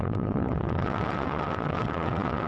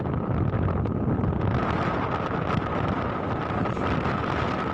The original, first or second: second